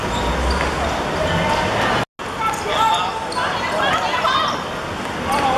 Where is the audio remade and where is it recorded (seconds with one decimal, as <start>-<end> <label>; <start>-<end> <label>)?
0.0-5.6 recorded